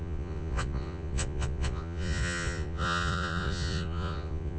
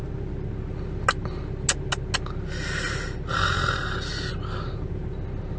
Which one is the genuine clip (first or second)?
second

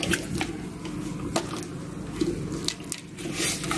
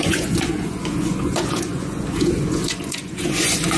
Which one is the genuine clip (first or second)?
first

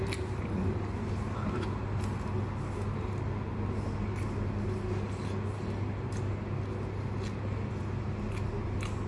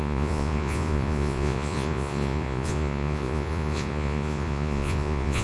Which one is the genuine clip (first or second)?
first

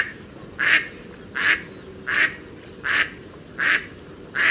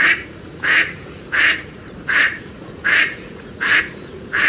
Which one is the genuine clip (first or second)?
first